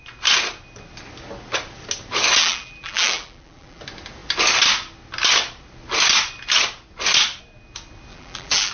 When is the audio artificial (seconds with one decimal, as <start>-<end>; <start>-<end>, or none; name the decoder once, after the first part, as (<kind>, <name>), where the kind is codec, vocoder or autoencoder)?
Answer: 2.4-3.8 (vocoder, BigVGAN v2); 8.1-8.7